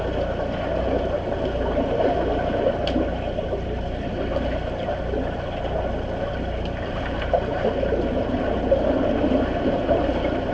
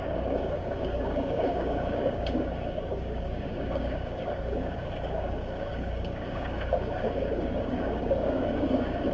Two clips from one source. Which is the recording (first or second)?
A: first